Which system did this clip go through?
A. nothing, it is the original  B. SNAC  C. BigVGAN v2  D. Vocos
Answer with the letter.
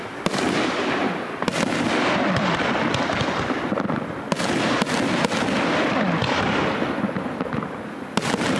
A